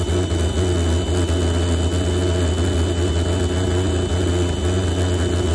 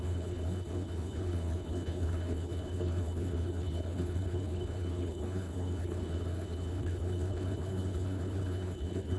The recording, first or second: first